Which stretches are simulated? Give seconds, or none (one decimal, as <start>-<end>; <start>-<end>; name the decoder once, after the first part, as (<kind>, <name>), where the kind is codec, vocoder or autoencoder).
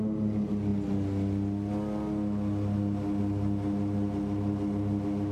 none